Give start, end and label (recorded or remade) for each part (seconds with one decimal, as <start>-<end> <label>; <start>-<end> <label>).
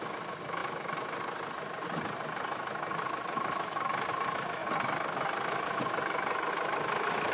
0.0-7.3 recorded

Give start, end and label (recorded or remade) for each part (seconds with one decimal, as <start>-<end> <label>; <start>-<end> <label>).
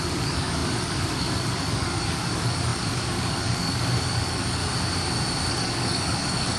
0.0-4.6 remade; 4.6-5.5 recorded; 5.5-6.6 remade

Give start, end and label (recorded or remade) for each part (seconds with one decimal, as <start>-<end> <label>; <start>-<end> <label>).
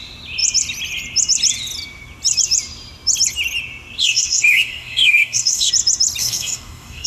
0.0-4.0 recorded; 4.0-5.7 remade; 5.7-6.2 recorded; 6.2-7.1 remade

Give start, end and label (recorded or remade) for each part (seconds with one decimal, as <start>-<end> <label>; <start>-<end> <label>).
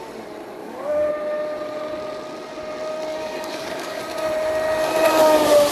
0.0-0.6 recorded; 0.6-1.1 remade; 1.1-3.1 recorded; 3.1-4.0 remade; 4.0-5.7 recorded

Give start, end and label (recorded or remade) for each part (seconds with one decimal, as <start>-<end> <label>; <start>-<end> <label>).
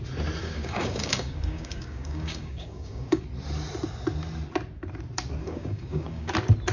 0.0-0.4 recorded; 0.4-3.2 remade; 3.2-5.4 recorded; 5.4-6.3 remade; 6.3-6.7 recorded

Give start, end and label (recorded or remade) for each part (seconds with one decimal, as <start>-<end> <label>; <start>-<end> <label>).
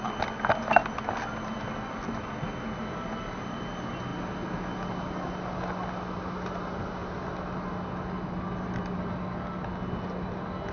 0.0-10.7 recorded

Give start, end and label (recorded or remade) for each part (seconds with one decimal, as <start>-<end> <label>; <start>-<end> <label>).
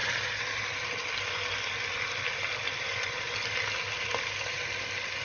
0.0-5.2 recorded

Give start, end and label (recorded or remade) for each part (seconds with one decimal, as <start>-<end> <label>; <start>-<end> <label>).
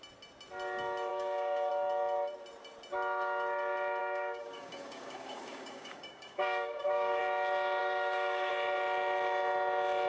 0.0-1.1 recorded; 1.1-1.7 remade; 1.7-4.0 recorded; 4.0-7.2 remade; 7.2-7.8 recorded; 7.8-8.5 remade; 8.5-10.1 recorded